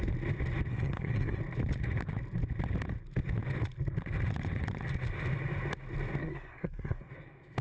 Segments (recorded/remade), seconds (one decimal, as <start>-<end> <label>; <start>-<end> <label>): 0.0-0.7 recorded; 0.7-1.4 remade; 1.4-6.2 recorded; 6.2-7.1 remade; 7.1-7.6 recorded